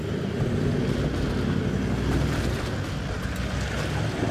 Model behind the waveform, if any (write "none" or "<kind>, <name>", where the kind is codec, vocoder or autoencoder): none